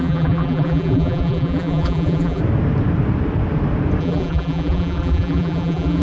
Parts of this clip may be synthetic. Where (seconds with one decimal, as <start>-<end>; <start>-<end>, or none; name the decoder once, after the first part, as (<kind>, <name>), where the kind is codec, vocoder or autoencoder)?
0.0-2.4 (vocoder, BigVGAN v2); 4.0-6.0